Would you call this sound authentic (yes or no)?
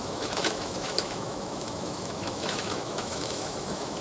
no